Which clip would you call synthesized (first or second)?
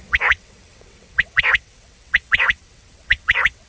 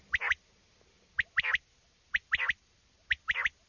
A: first